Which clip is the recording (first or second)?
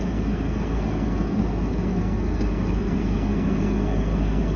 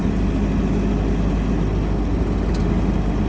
second